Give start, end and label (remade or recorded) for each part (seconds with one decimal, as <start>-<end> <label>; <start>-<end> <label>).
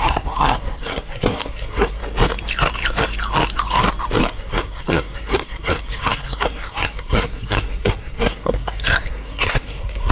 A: 0.0-2.0 remade; 2.0-4.2 recorded; 4.2-10.1 remade